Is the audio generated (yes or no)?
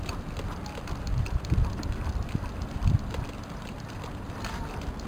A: no